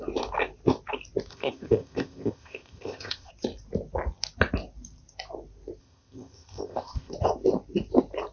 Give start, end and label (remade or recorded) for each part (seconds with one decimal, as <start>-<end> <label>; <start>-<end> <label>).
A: 0.0-1.3 recorded; 1.3-3.3 remade; 3.3-5.8 recorded; 5.8-7.1 remade; 7.1-8.3 recorded

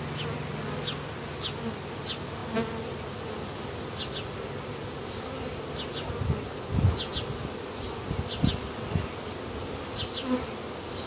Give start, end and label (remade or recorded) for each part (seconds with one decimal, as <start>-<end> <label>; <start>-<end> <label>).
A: 0.0-11.1 recorded

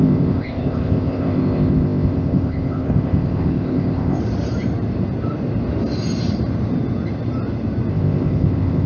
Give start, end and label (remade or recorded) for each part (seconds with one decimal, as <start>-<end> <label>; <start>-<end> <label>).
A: 0.0-4.2 remade; 4.2-7.9 recorded; 7.9-8.9 remade

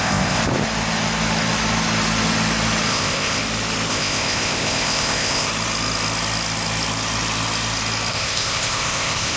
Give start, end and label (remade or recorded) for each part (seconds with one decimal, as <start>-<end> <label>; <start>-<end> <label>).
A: 0.0-0.4 remade; 0.4-2.9 recorded; 2.9-3.4 remade; 3.4-3.9 recorded; 3.9-5.5 remade; 5.5-8.1 recorded; 8.1-9.4 remade

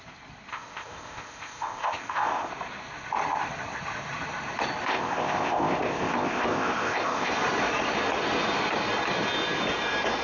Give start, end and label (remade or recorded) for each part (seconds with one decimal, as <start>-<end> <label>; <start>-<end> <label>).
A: 0.0-0.5 recorded; 0.5-2.5 remade; 2.5-4.9 recorded; 4.9-7.3 remade; 7.3-10.2 recorded

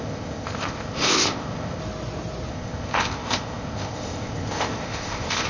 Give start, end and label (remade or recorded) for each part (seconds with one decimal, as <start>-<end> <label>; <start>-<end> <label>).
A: 0.0-1.8 remade; 1.8-2.5 recorded; 2.5-5.5 remade